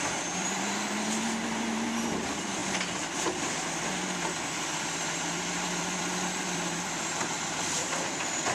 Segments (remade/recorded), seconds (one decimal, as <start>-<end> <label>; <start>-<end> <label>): 0.0-8.5 remade